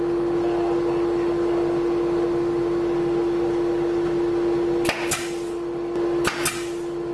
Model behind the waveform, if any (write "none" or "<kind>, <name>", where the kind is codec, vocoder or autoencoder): none